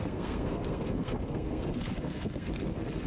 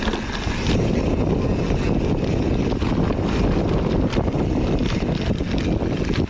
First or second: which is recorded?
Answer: second